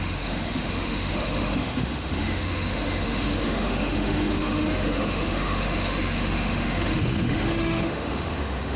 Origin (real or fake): fake